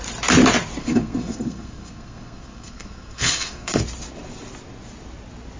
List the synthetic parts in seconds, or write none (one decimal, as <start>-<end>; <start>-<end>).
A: 0.8-3.8

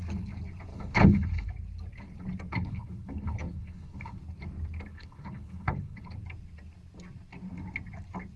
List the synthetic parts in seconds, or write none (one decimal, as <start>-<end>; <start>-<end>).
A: 0.7-1.5; 2.5-4.2; 4.9-6.1

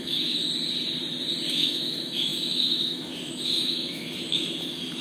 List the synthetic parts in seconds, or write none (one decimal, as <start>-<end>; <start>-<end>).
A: 0.0-0.4; 1.5-5.0